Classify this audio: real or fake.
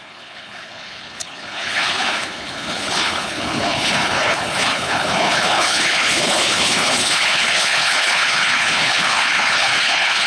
fake